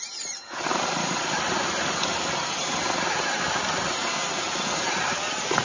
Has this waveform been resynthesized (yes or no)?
no